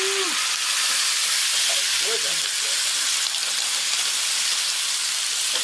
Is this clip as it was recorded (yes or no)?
yes